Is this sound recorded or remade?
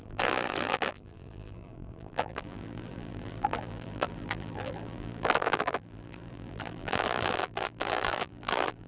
remade